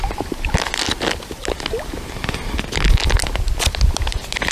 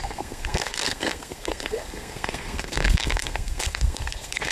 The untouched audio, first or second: first